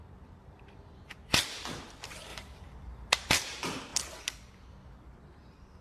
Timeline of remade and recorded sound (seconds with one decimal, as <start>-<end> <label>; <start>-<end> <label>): 0.0-3.9 remade; 3.9-4.5 recorded; 4.5-5.8 remade